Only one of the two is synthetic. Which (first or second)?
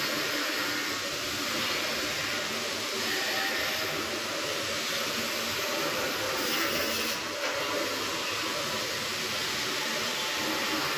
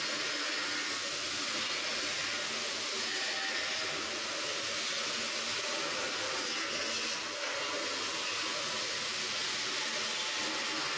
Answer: first